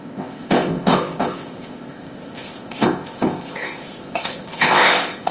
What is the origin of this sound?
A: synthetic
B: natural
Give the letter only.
A